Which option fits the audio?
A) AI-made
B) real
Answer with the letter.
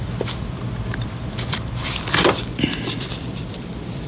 A